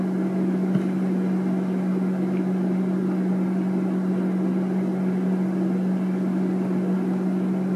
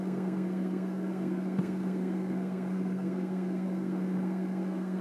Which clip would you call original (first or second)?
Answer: first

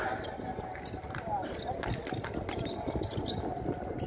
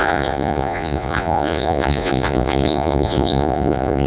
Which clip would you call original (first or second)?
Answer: first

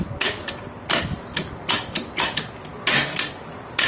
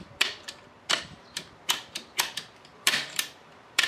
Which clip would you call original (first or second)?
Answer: first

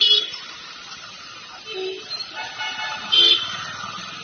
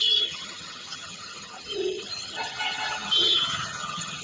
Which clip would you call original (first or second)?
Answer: first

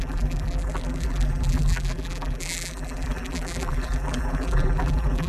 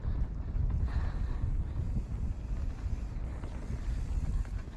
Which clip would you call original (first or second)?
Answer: second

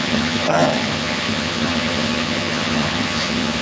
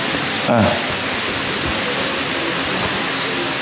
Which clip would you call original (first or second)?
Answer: second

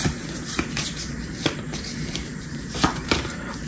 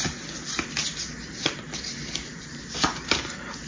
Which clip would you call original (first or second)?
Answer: second